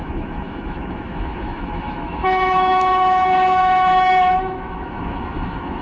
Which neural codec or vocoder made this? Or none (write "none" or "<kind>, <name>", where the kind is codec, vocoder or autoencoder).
autoencoder, DAC-VAE